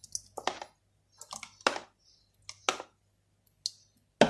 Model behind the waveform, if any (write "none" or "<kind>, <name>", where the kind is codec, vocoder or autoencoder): none